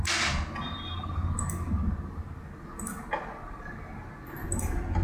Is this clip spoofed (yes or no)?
no